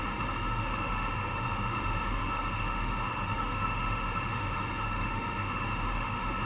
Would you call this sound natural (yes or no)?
no